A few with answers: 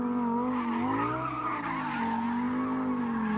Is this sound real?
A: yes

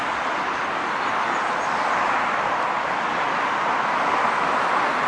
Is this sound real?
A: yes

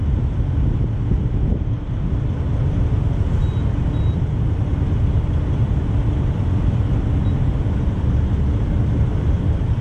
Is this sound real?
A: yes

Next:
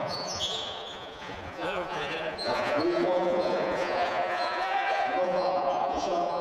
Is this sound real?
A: no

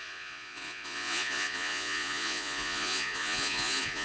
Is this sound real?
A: no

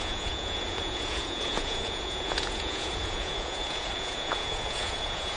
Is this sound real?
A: no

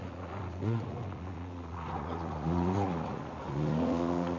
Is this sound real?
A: no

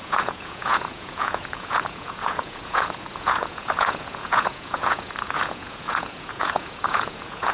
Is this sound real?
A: no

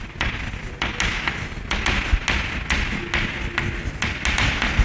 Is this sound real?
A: yes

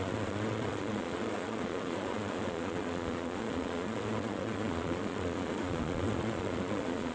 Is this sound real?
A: no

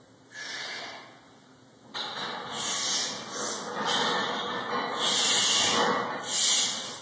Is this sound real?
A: yes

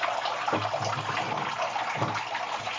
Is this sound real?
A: yes